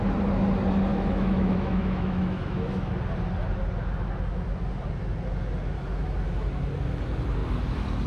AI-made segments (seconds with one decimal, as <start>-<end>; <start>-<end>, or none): 0.9-2.9